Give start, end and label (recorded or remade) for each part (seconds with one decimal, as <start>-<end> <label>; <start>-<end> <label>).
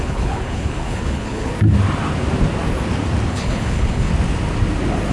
0.0-1.5 remade; 1.5-3.3 recorded; 3.3-4.1 remade; 4.1-5.1 recorded